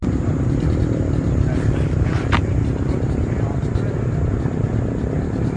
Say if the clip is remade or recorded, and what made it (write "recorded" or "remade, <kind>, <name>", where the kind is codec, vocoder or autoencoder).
recorded